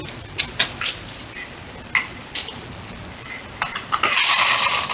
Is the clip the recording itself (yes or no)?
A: yes